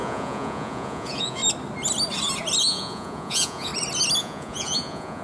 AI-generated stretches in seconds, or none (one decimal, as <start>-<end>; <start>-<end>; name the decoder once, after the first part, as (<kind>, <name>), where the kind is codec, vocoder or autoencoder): 0.0-1.4 (vocoder, Vocos); 2.6-3.7; 4.2-5.2